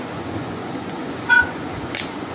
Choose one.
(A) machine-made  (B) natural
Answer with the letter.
A